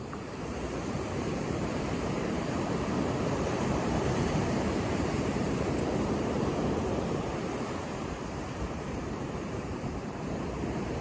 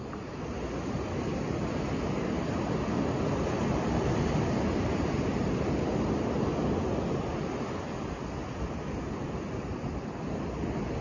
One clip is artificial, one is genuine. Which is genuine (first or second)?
second